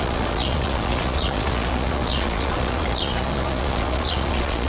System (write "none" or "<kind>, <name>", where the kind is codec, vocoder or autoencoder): vocoder, Vocos